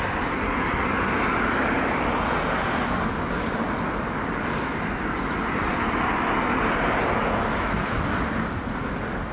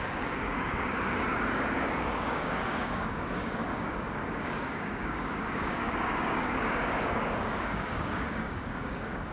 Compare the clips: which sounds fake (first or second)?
second